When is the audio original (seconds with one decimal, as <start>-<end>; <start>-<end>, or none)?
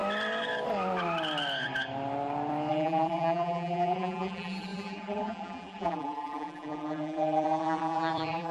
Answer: 0.0-2.7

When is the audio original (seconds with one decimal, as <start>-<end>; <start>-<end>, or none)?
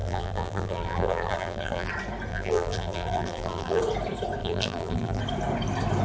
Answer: 1.9-2.3; 3.8-4.4; 5.2-6.0